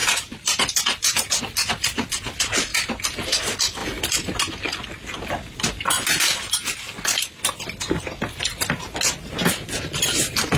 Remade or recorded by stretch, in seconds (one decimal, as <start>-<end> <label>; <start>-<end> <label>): 0.0-1.4 remade; 1.4-2.7 recorded; 2.7-3.4 remade; 3.4-10.6 recorded